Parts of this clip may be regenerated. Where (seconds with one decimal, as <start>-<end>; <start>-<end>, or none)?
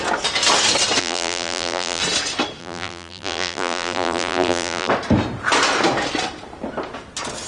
1.0-2.0; 2.6-4.9